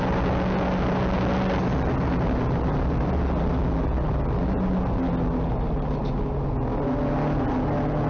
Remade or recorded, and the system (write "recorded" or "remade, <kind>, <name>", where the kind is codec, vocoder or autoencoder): recorded